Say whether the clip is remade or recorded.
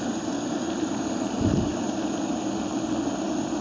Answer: recorded